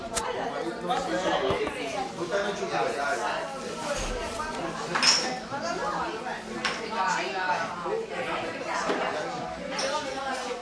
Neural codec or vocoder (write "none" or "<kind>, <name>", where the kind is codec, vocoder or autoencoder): none